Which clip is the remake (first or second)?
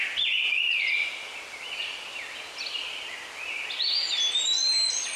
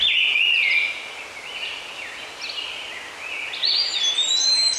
first